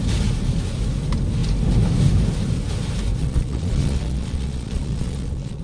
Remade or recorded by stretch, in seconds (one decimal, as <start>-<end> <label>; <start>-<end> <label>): 0.0-3.2 recorded; 3.2-5.6 remade